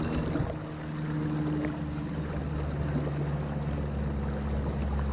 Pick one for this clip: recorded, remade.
recorded